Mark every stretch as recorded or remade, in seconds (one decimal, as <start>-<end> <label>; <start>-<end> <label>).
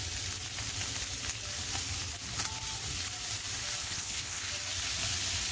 0.0-3.8 recorded; 3.8-4.5 remade; 4.5-5.5 recorded